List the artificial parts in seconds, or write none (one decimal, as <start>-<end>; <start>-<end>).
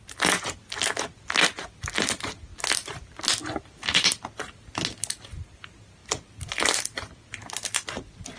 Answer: none